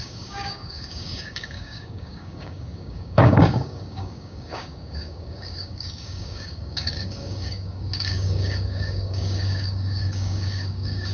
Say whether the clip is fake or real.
fake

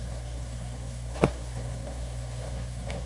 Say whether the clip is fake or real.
fake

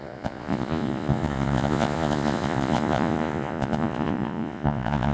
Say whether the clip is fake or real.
fake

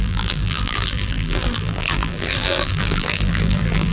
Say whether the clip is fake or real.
fake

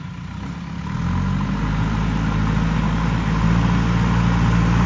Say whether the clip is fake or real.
real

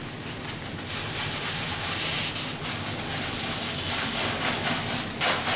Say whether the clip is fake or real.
real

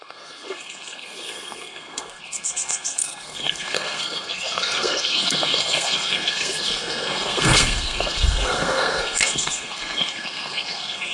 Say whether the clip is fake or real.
fake